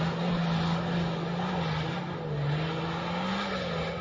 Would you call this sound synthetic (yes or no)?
no